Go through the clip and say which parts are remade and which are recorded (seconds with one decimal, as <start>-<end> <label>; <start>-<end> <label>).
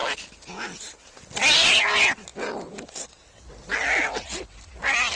0.0-5.2 recorded